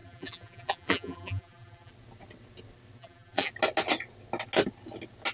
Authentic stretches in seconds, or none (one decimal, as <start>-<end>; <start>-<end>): 1.9-3.0; 3.5-5.3